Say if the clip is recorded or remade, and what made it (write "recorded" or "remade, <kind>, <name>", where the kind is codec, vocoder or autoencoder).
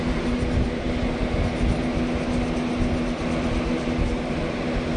recorded